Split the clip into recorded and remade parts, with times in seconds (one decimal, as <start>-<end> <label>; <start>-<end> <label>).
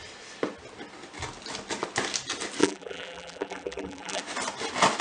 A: 0.0-2.6 recorded; 2.6-4.2 remade; 4.2-5.0 recorded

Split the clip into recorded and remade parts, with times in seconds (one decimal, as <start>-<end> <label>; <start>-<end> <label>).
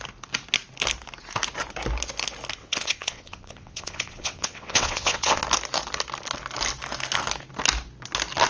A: 0.0-2.6 recorded; 2.6-5.4 remade; 5.4-8.5 recorded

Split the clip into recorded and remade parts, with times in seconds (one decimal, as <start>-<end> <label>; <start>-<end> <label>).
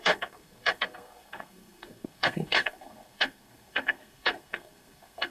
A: 0.0-5.3 remade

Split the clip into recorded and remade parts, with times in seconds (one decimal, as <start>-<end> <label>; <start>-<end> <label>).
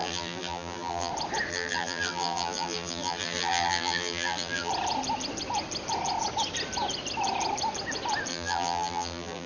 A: 0.0-1.1 remade; 1.1-1.5 recorded; 1.5-4.7 remade; 4.7-8.3 recorded; 8.3-9.5 remade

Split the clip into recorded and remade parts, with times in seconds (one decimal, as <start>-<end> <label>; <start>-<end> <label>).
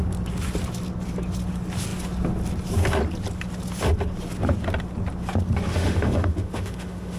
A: 0.0-5.7 recorded; 5.7-7.2 remade